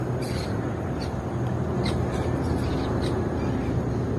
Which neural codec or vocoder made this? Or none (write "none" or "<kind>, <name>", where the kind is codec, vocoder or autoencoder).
none